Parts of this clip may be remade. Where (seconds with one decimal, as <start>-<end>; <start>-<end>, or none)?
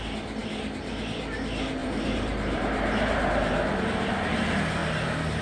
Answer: 1.8-3.8